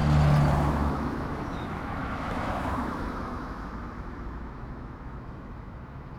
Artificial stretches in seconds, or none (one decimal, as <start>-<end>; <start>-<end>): 0.7-6.2